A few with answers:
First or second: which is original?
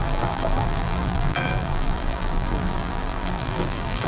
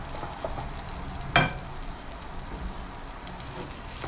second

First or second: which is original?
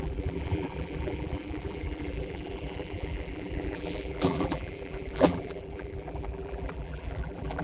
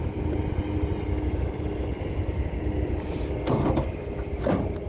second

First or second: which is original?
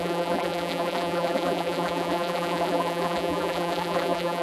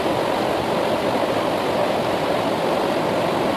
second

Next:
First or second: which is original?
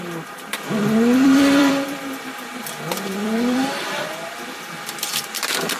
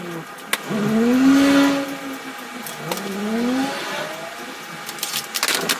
second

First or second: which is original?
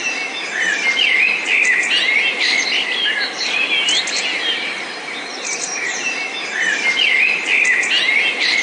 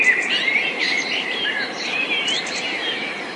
first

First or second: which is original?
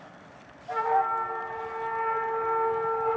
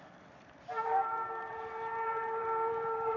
first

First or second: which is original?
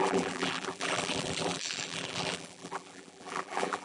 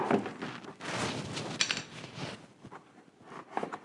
second